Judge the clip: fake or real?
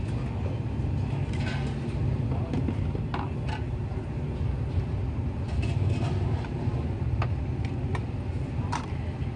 real